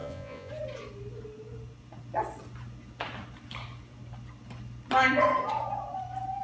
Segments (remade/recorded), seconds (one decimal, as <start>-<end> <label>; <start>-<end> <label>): 0.0-0.5 remade; 0.5-6.4 recorded